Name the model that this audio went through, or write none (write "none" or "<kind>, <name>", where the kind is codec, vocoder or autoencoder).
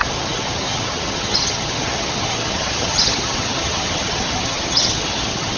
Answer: vocoder, HiFi-GAN